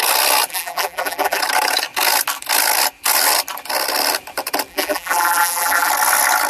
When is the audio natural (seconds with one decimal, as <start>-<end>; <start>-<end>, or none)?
0.0-0.5; 1.4-4.7; 5.9-6.5